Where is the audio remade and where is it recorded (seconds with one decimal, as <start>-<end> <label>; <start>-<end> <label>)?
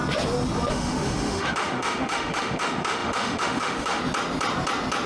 0.0-0.7 recorded; 0.7-4.0 remade; 4.0-5.1 recorded